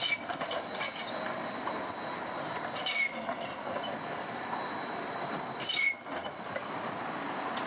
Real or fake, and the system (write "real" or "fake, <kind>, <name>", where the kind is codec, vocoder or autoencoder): real